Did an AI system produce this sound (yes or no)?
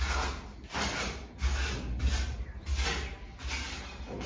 no